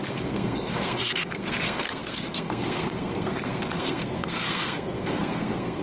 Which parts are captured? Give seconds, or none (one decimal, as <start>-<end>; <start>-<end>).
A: none